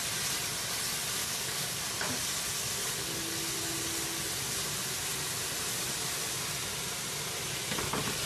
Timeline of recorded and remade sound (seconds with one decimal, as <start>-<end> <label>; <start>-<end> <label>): 0.0-1.2 recorded; 1.2-1.8 remade; 1.8-8.3 recorded